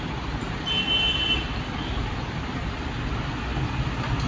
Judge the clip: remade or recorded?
recorded